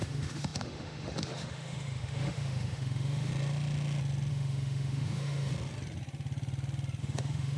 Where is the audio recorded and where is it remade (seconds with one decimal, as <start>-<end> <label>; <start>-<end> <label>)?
0.0-3.3 remade; 3.3-4.3 recorded; 4.3-5.5 remade; 5.5-7.0 recorded; 7.0-7.6 remade